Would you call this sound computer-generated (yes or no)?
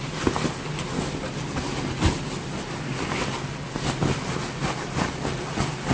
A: no